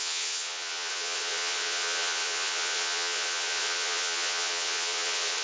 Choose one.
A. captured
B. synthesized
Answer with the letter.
B